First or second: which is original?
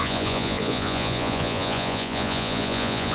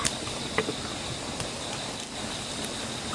second